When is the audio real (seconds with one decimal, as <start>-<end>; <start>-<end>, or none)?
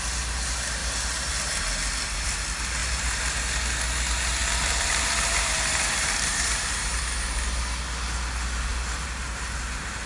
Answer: 0.0-2.8; 3.4-4.4; 7.0-8.7